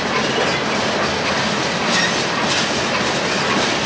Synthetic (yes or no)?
no